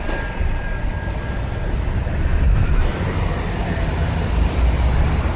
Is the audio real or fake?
real